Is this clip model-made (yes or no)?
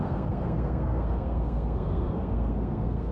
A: yes